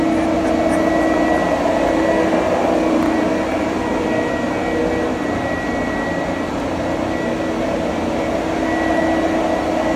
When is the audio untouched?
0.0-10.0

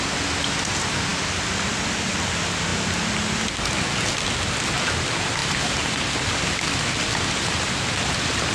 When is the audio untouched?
0.0-8.5

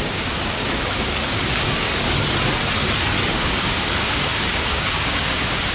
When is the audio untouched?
1.9-3.3

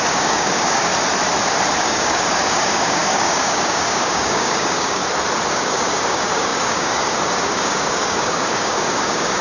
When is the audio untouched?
0.9-1.8; 5.0-5.5